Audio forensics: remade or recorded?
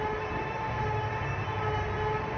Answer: recorded